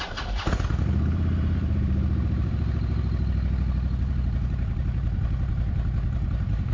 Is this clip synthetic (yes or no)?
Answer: yes